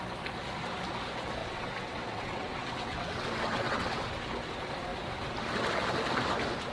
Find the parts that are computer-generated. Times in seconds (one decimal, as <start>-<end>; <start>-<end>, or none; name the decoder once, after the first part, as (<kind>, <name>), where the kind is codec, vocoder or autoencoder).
1.4-4.1 (vocoder, WaveNeXt)